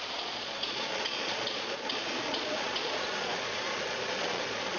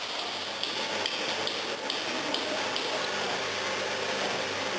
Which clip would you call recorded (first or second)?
second